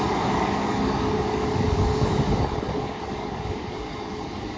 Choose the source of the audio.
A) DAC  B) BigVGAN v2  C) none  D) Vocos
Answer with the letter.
A